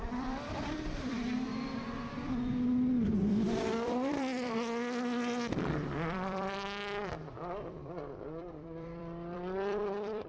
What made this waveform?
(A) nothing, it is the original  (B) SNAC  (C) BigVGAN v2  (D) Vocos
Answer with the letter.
C